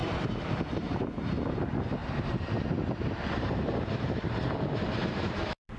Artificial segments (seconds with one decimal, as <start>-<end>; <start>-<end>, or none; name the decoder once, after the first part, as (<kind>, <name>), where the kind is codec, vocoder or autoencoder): 0.0-1.0 (vocoder, BigVGAN v2); 2.0-5.8